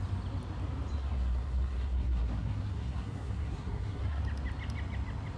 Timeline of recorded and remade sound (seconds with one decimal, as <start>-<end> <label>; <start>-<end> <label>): 0.0-1.0 recorded; 1.0-4.2 remade; 4.2-5.4 recorded